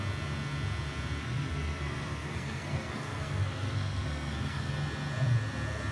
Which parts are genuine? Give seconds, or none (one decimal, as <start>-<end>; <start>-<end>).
0.0-1.2; 4.7-5.9